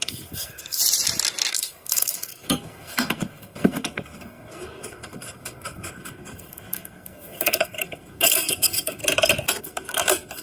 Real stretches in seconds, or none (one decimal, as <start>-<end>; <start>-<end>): 0.8-1.5; 9.0-9.6